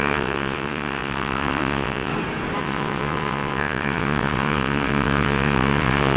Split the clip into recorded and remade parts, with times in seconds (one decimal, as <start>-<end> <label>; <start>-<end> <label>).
0.0-2.1 remade; 2.1-2.6 recorded; 2.6-6.2 remade